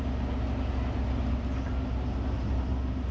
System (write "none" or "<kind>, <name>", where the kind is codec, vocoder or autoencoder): none